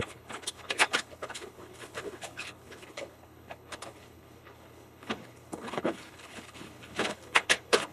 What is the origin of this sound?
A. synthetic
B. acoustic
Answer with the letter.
A